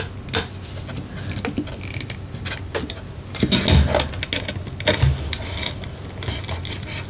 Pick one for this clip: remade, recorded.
recorded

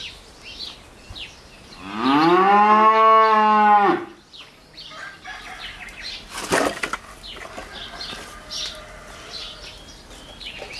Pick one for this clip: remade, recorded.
recorded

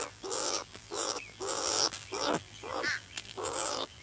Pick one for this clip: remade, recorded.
remade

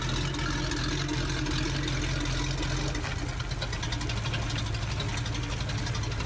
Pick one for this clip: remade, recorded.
recorded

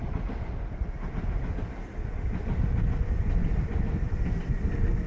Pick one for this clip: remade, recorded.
recorded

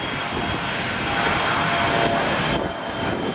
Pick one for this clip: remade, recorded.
recorded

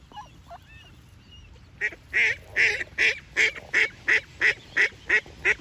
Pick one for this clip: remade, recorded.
recorded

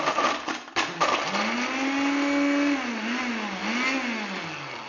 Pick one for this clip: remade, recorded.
recorded